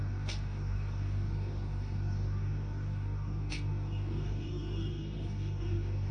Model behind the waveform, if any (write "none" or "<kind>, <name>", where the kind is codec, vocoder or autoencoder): codec, DAC